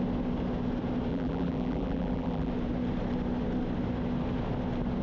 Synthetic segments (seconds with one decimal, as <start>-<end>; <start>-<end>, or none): 1.1-2.5